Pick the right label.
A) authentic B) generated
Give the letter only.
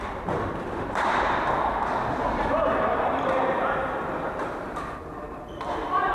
B